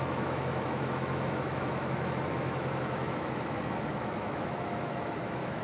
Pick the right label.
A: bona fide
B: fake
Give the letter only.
B